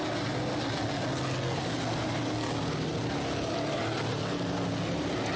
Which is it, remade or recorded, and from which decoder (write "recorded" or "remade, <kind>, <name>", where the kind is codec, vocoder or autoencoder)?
recorded